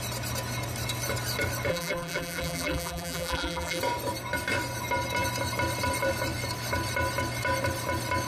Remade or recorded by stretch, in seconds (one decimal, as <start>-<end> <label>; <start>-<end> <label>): 0.0-1.7 recorded; 1.7-3.8 remade; 3.8-8.3 recorded